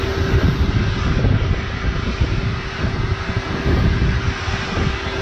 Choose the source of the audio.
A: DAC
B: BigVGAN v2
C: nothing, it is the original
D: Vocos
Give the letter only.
C